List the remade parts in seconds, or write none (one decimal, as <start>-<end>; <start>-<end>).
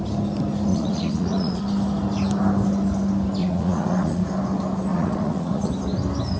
0.7-1.6; 3.4-4.3; 4.9-5.7